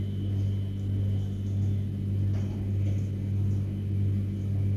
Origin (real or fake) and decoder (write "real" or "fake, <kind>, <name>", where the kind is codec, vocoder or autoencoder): real